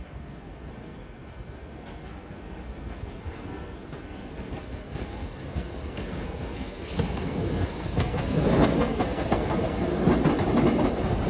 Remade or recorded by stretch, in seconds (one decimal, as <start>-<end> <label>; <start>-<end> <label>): 0.0-9.9 remade; 9.9-11.3 recorded